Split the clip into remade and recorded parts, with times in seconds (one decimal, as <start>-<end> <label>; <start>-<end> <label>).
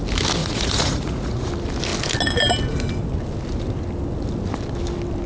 0.0-0.4 recorded; 0.4-1.5 remade; 1.5-5.3 recorded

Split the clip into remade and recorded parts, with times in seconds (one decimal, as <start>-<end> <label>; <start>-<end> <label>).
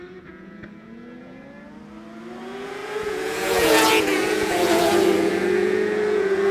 0.0-1.4 remade; 1.4-2.4 recorded; 2.4-6.5 remade